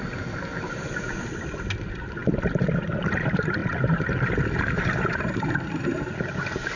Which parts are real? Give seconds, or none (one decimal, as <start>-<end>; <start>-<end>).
0.0-3.6; 6.2-6.8